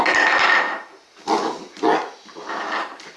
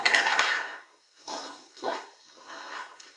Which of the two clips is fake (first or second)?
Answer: second